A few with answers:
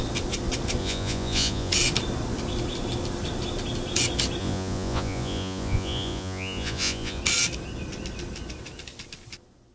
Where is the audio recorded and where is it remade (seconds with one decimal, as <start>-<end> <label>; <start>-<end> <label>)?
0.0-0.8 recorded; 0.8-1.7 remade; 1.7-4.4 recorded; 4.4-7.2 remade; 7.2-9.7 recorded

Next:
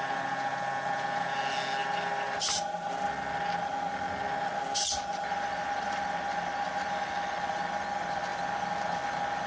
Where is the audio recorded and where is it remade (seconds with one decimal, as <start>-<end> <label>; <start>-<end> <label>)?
0.0-9.5 recorded

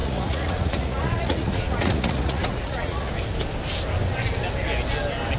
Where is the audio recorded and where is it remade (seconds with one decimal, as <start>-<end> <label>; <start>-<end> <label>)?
0.0-3.1 remade; 3.1-5.4 recorded

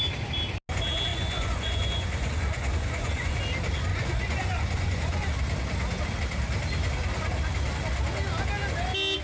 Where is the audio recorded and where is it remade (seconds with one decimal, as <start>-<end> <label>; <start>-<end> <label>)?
0.0-1.1 recorded; 1.1-3.4 remade; 3.4-3.9 recorded; 3.9-5.3 remade; 5.3-9.2 recorded